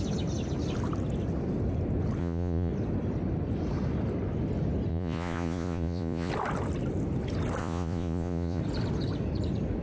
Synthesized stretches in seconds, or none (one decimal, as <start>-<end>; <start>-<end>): 2.2-2.7; 4.9-6.3; 7.6-8.6